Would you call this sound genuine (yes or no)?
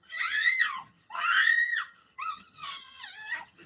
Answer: no